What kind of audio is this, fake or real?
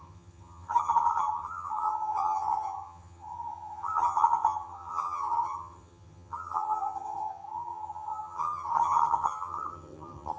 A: fake